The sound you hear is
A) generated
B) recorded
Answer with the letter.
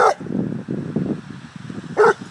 B